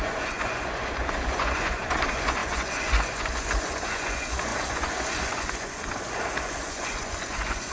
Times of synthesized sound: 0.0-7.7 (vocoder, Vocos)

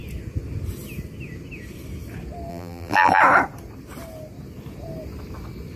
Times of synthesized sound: 2.5-3.2 (vocoder, BigVGAN v2)

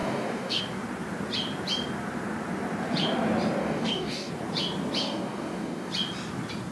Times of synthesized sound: 0.0-0.6 (codec, DAC); 3.6-4.3; 5.0-5.9

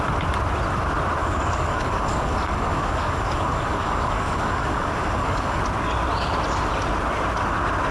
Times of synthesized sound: 1.2-5.6 (codec, DAC)

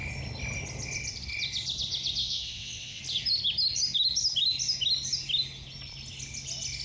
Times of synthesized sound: 2.2-3.0 (vocoder, WaveNeXt)

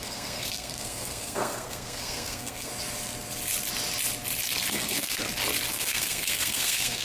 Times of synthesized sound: 0.0-2.7 (codec, SNAC); 4.7-5.2; 5.7-7.0

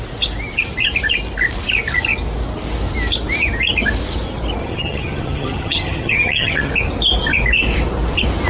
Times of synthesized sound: 4.6-6.7 (vocoder, HiFi-GAN)